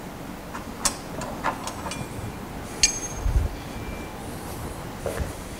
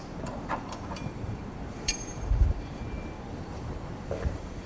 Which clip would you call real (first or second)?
first